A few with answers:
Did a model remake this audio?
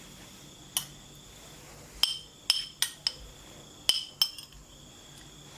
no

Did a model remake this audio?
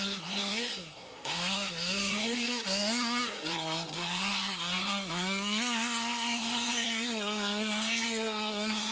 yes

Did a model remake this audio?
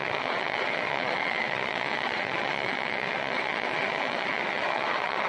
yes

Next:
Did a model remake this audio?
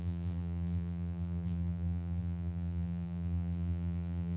yes